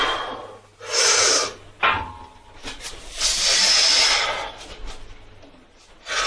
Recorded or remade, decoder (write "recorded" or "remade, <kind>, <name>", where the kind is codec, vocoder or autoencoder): recorded